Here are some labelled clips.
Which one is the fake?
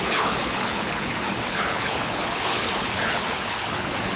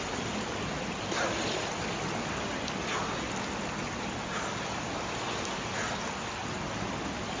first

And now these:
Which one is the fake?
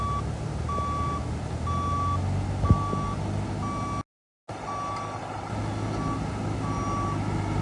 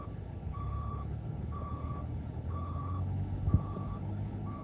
second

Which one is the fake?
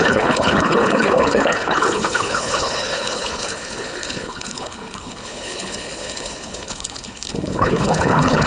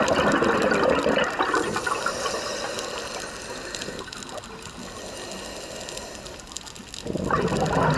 first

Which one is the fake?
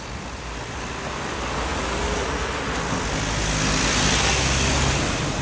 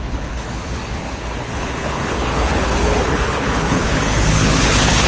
second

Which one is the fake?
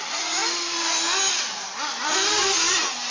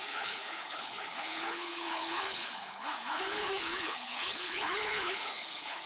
second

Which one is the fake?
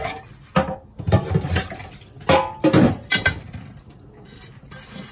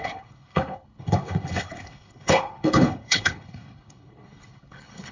second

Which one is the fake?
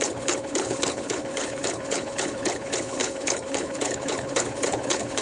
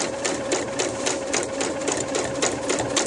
first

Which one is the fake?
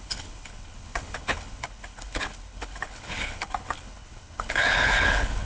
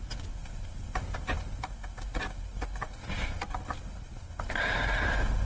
first